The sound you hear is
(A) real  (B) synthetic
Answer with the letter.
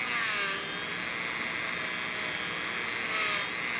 A